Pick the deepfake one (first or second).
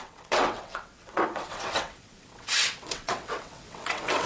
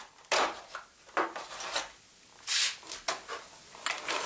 first